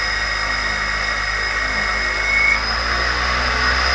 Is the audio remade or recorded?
recorded